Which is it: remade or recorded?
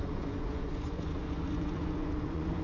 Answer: remade